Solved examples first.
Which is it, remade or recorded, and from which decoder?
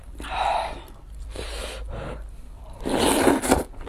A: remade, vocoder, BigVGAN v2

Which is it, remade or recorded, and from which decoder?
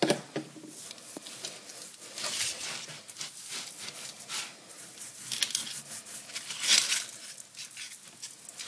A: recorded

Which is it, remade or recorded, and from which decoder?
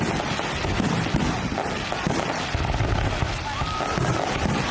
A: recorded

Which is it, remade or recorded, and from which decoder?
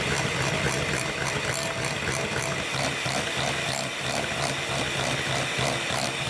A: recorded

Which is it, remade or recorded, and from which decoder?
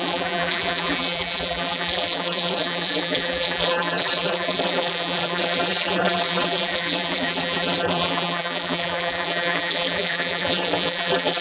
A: remade, vocoder, BigVGAN v2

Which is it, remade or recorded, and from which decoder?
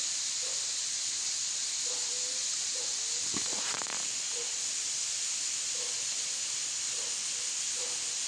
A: recorded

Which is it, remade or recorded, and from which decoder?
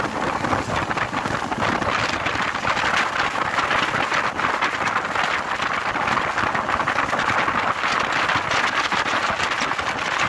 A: recorded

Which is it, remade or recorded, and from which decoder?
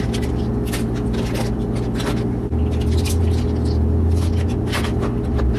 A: recorded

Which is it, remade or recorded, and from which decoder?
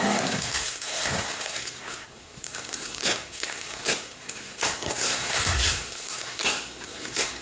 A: remade, codec, SNAC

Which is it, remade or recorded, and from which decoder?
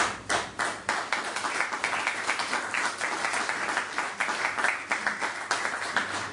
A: recorded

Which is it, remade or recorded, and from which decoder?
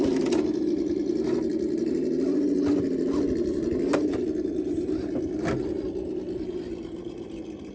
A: recorded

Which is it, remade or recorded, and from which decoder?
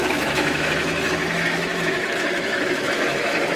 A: remade, autoencoder, DAC-VAE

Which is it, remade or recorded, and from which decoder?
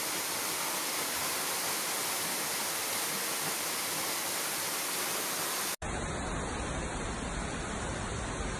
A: recorded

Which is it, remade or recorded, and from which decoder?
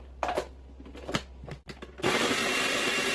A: recorded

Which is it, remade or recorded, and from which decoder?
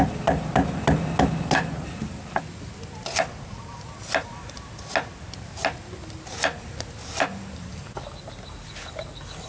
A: recorded